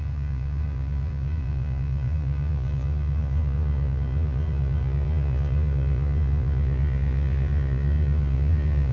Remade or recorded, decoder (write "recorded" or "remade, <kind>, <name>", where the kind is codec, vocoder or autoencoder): remade, vocoder, Vocos